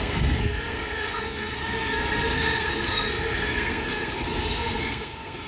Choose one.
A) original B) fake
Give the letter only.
B